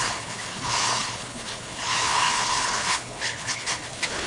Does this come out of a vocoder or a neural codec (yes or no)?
yes